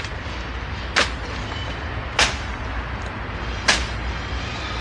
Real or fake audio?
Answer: real